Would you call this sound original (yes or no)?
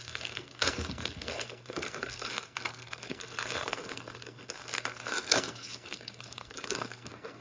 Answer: no